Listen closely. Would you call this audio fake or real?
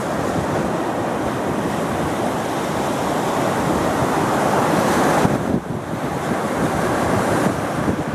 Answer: real